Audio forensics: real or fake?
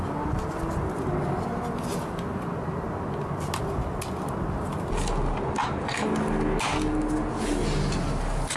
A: real